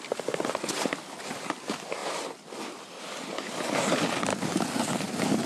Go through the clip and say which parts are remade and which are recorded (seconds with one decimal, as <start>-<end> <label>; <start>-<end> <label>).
0.0-5.5 recorded